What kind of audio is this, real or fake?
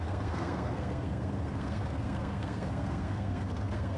fake